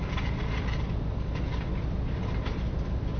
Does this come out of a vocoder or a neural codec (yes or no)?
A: no